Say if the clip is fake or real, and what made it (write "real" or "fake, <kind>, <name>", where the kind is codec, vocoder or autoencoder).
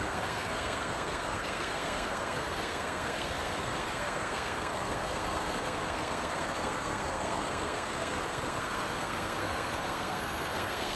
fake, codec, SNAC